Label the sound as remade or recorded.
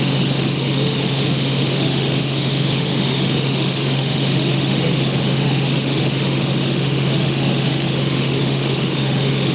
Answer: remade